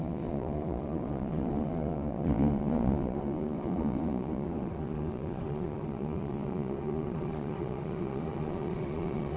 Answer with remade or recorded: remade